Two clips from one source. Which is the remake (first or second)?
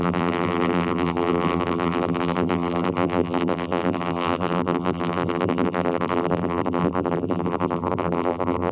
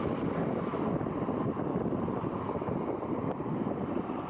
first